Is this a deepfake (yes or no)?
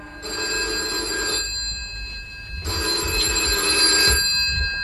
no